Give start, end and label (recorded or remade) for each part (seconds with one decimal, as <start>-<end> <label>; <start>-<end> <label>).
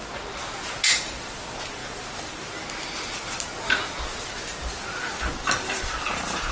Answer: 0.0-6.5 recorded